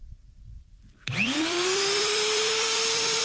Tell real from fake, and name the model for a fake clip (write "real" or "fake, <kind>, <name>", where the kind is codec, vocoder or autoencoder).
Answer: fake, vocoder, BigVGAN v2